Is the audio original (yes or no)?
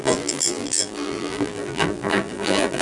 no